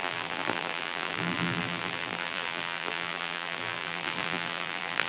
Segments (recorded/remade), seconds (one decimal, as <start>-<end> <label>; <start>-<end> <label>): 0.0-5.1 remade